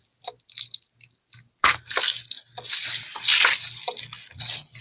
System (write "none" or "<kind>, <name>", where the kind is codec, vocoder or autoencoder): none